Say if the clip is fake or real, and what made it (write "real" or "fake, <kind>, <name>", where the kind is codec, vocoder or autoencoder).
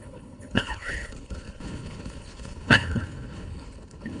fake, codec, HILCodec